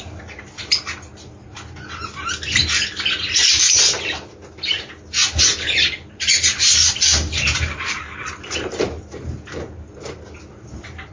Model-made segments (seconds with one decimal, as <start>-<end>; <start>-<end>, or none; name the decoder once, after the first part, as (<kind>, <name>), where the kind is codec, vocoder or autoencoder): none